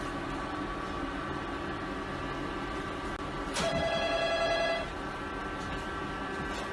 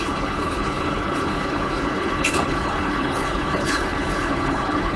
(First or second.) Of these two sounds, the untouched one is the first